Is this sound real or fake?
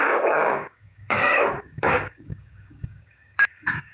fake